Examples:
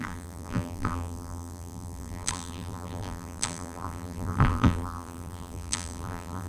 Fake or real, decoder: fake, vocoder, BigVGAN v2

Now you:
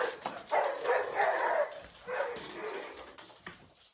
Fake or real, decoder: fake, vocoder, BigVGAN v2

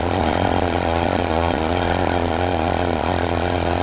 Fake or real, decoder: fake, vocoder, Vocos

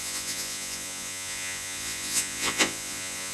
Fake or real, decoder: fake, vocoder, Vocos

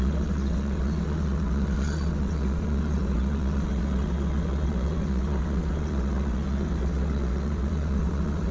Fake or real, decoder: fake, vocoder, WaveNeXt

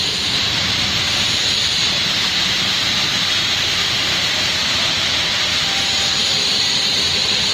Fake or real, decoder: fake, vocoder, BigVGAN v2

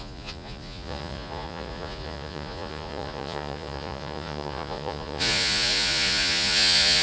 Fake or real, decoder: fake, vocoder, Vocos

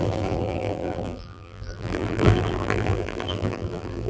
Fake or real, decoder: fake, vocoder, BigVGAN v2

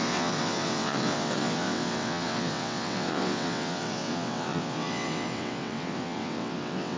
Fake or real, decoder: fake, vocoder, WaveNeXt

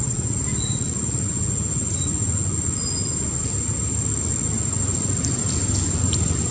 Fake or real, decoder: real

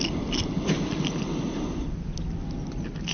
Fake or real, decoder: real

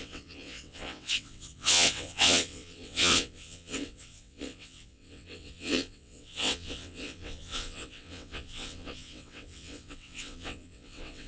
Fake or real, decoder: fake, vocoder, WaveNeXt